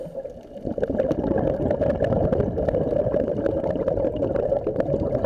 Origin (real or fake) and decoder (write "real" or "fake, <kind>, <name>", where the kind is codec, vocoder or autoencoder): real